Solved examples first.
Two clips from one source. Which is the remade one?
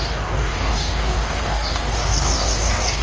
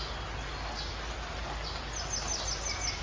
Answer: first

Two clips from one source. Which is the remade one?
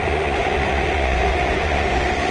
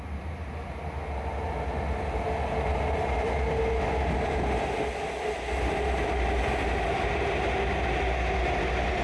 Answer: first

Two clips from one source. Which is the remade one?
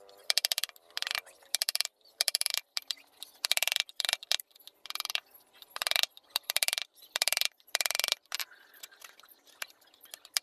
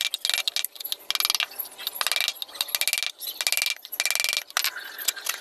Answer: first